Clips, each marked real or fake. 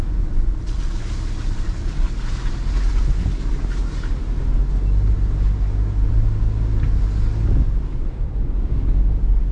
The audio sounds real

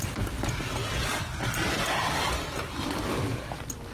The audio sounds real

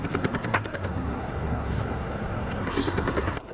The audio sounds fake